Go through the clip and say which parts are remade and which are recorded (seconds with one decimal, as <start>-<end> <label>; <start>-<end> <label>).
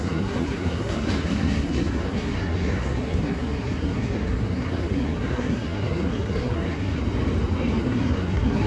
0.0-7.0 remade; 7.0-7.8 recorded; 7.8-8.7 remade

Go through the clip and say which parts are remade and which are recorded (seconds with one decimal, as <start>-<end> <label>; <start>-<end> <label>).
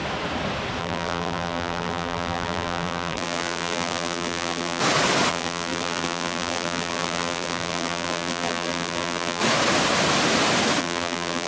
0.0-0.8 recorded; 0.8-4.8 remade; 4.8-5.3 recorded; 5.3-9.4 remade; 9.4-10.8 recorded; 10.8-11.5 remade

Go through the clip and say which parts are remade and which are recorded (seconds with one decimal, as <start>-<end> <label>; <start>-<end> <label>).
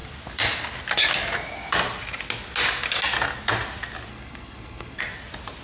0.0-4.1 recorded; 4.1-5.0 remade; 5.0-5.6 recorded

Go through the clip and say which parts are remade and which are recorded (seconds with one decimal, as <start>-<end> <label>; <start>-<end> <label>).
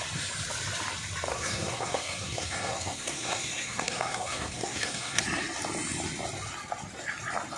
0.0-1.3 recorded; 1.3-5.2 remade; 5.2-7.6 recorded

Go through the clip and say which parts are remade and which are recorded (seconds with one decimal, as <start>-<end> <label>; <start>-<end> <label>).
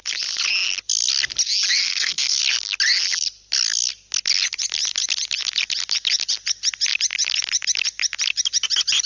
0.0-1.8 recorded; 1.8-2.4 remade; 2.4-9.1 recorded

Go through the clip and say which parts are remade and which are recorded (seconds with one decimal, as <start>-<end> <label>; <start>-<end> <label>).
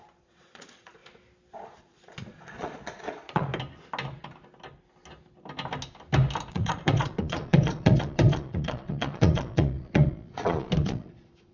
0.0-1.0 remade; 1.0-1.6 recorded; 1.6-3.5 remade; 3.5-6.5 recorded; 6.5-11.5 remade